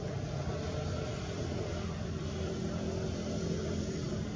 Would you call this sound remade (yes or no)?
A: no